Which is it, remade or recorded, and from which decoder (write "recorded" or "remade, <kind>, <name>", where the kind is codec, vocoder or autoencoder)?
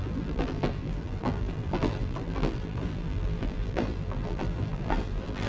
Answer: remade, vocoder, BigVGAN v2